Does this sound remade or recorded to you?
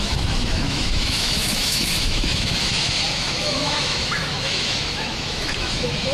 remade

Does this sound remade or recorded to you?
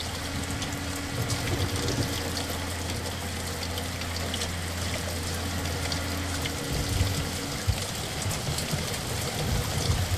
recorded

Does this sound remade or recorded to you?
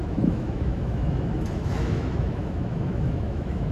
remade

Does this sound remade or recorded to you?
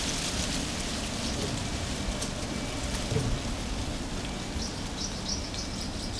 recorded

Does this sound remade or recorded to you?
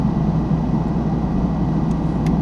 recorded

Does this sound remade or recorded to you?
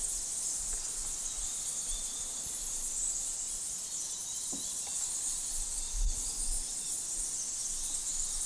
recorded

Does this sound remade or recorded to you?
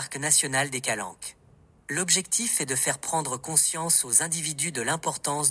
recorded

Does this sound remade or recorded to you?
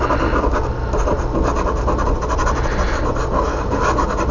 recorded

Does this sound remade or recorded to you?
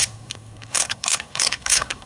remade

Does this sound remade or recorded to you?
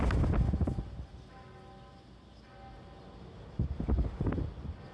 recorded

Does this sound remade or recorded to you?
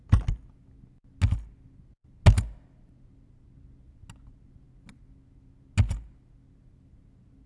recorded